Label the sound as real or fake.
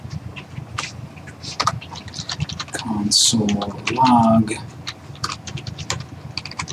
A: real